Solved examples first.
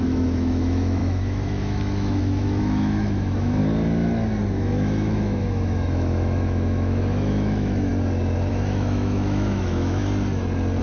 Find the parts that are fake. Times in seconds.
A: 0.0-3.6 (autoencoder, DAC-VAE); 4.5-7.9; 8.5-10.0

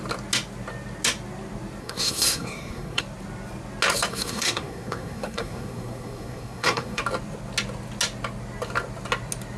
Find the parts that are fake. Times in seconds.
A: 1.8-3.0 (codec, SNAC); 4.1-7.0

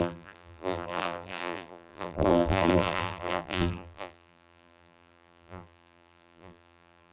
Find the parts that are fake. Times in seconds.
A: 0.0-7.1 (vocoder, BigVGAN v2)

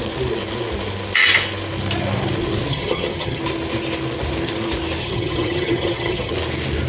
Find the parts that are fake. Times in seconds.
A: 2.7-3.4 (vocoder, HiFi-GAN); 5.0-6.3

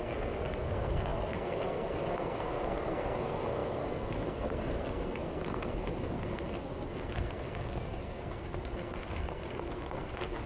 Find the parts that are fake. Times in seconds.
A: 0.0-10.5 (codec, SNAC)

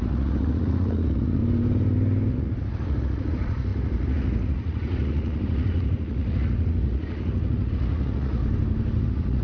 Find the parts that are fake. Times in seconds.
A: 0.0-1.4 (vocoder, Vocos); 2.3-8.4; 9.0-9.4